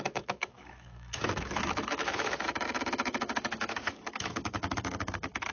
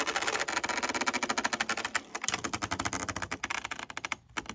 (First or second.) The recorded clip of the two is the second